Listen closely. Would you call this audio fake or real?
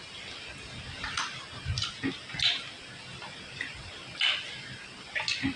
real